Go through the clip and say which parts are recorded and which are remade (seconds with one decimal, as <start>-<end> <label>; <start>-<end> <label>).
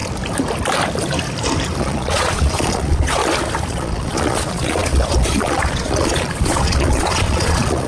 0.0-1.8 recorded; 1.8-3.2 remade; 3.2-3.7 recorded; 3.7-7.9 remade